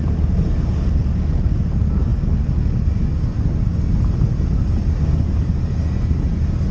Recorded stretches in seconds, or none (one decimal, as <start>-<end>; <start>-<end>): 0.0-6.7